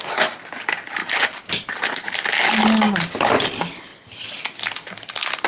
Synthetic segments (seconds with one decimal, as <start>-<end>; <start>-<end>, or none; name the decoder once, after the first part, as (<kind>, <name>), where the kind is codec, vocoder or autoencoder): none